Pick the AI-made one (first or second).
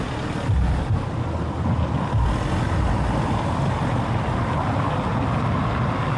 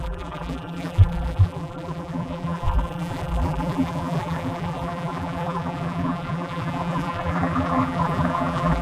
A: second